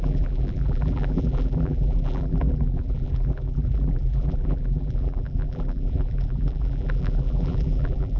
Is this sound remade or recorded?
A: remade